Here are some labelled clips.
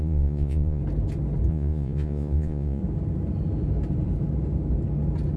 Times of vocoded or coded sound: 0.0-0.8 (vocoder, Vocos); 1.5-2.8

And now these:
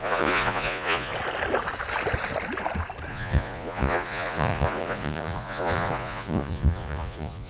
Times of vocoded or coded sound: 0.0-1.1 (vocoder, Vocos); 3.1-7.5

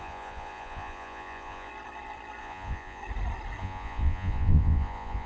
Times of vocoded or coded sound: 0.0-1.7 (vocoder, Vocos); 2.4-3.0; 3.6-5.3